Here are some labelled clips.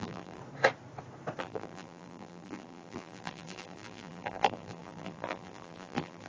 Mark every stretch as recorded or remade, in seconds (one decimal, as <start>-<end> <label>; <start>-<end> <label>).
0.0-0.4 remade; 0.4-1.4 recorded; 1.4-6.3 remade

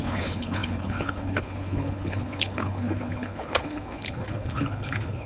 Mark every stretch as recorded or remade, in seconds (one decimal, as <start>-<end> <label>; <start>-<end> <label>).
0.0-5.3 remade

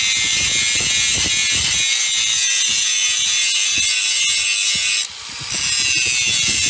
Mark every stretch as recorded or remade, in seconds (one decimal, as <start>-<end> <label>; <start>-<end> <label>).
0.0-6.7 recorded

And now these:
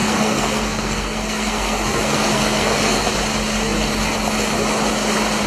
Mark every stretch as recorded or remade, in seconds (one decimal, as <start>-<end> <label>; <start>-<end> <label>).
0.0-3.1 remade; 3.1-5.5 recorded

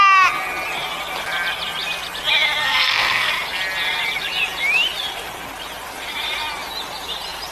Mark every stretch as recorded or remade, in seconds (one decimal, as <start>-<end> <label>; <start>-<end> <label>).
0.0-2.6 recorded; 2.6-3.3 remade; 3.3-7.5 recorded